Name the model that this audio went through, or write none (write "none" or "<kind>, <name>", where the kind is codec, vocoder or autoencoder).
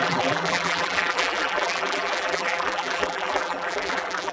vocoder, BigVGAN v2